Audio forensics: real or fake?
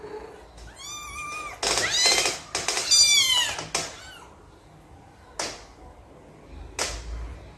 real